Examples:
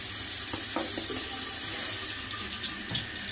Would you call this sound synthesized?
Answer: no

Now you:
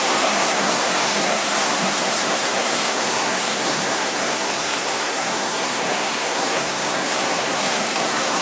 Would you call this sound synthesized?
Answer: yes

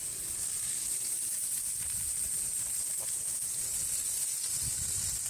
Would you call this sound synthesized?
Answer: no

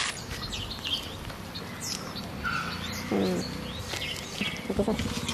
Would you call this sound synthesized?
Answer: no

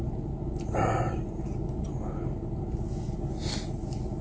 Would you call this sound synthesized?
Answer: no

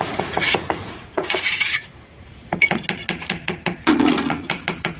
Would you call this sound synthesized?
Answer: yes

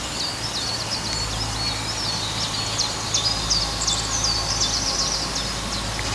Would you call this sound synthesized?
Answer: no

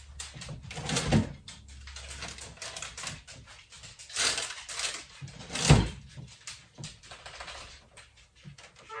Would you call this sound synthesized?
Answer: no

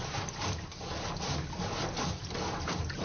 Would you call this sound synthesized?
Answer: no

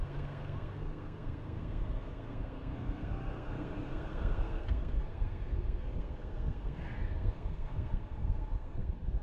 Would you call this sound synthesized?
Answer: yes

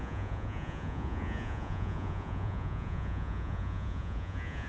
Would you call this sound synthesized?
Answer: yes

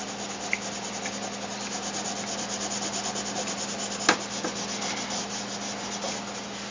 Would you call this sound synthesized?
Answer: no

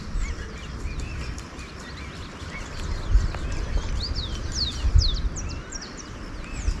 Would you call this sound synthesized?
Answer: no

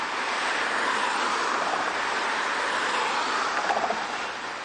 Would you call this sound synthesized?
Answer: yes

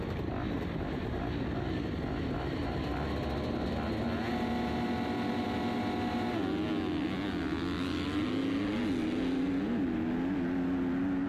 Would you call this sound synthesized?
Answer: no